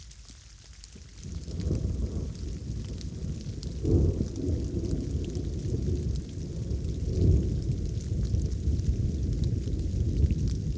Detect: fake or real real